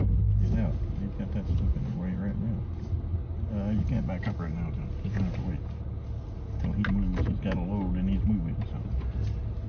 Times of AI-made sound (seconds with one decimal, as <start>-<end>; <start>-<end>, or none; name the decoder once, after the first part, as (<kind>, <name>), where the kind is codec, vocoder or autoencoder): none